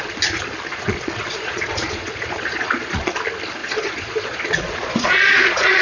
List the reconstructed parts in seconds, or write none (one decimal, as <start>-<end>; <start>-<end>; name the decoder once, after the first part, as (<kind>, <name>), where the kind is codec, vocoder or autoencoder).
0.7-3.1 (vocoder, Vocos); 3.6-5.8